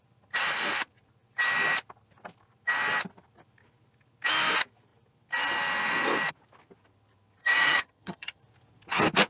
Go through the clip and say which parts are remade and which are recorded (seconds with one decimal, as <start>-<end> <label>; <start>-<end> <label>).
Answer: 0.0-7.4 recorded; 7.4-8.4 remade; 8.4-9.3 recorded